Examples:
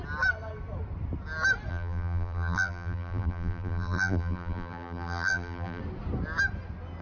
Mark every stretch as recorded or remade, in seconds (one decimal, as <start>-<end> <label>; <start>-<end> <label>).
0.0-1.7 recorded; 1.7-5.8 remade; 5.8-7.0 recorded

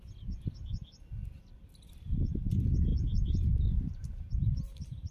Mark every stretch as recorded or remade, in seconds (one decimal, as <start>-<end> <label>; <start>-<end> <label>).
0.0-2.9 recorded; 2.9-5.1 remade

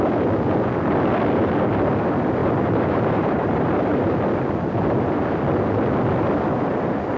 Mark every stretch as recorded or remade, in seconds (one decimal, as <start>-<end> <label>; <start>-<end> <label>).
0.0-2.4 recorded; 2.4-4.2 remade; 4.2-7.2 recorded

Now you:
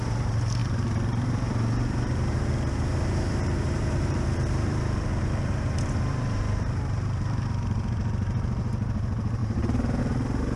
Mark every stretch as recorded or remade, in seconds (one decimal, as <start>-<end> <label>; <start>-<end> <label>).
0.0-10.6 remade

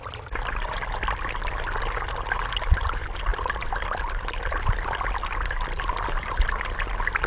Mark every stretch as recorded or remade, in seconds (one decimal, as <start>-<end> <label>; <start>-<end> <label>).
0.0-3.3 recorded; 3.3-4.5 remade; 4.5-7.3 recorded

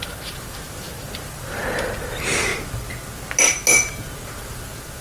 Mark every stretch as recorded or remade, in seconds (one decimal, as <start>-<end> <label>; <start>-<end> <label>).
0.0-2.5 remade; 2.5-4.2 recorded; 4.2-5.0 remade